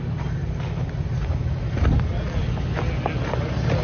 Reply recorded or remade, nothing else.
recorded